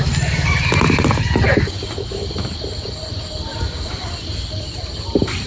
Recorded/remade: recorded